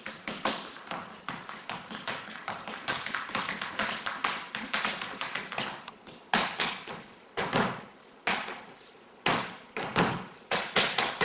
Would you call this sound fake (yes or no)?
no